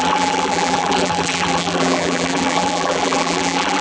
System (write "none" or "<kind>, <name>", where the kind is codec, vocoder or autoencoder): vocoder, BigVGAN v2